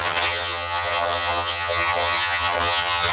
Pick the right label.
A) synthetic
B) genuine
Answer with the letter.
A